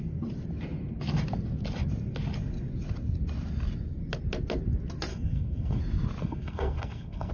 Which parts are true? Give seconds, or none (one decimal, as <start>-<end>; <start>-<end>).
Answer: 0.0-5.1; 5.8-6.2